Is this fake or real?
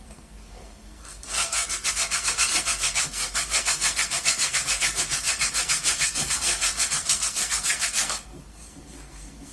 fake